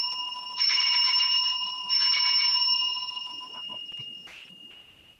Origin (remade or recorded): remade